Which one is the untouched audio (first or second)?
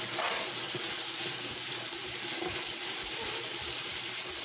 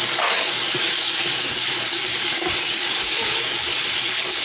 first